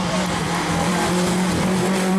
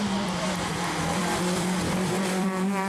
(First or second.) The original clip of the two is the first